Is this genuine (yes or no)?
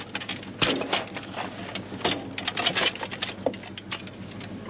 yes